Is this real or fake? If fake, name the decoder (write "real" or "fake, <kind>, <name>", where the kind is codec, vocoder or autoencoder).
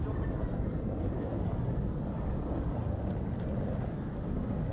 real